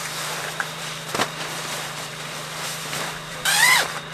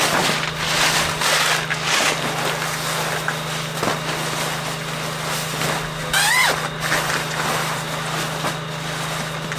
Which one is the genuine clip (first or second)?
second